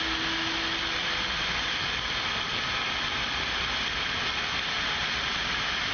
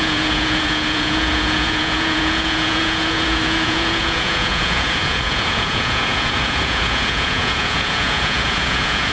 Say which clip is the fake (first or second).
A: second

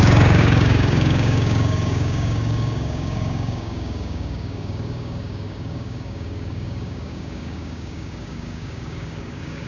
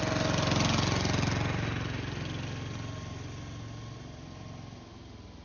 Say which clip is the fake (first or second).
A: first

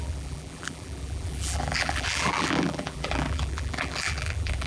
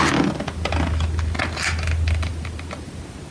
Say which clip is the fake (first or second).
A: first